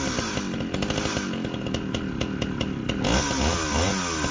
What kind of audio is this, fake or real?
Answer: real